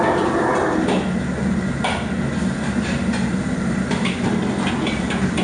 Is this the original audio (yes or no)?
yes